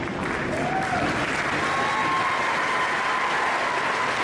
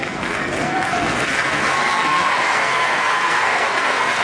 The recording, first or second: first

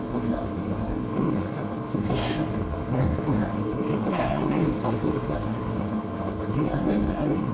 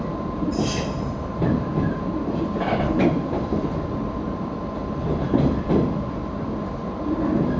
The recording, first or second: second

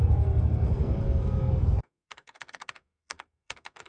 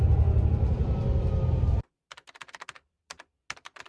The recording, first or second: second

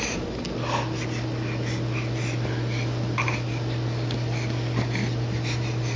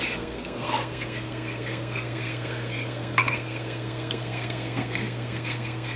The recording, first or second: first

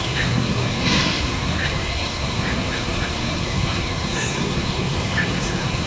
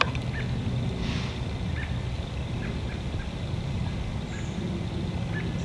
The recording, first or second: second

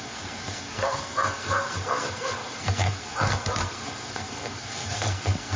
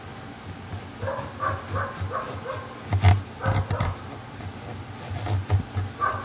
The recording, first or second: second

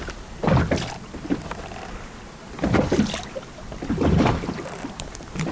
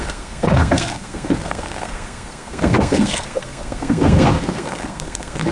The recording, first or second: first